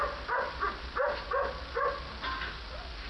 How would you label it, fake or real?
real